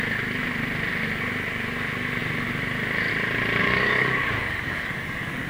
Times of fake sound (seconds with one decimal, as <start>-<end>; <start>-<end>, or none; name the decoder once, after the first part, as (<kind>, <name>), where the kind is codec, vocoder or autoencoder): 3.6-5.5 (codec, DAC)